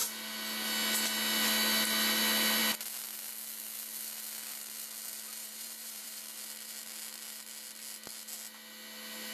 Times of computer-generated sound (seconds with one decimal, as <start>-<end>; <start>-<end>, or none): 5.4-6.2